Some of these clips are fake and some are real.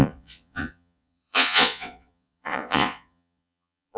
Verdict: fake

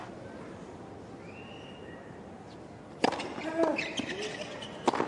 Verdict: real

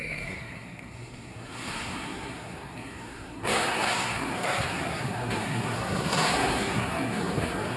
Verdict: fake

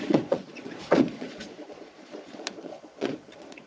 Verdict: fake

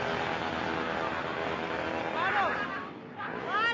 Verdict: real